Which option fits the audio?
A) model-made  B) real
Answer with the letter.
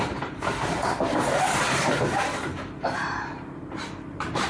A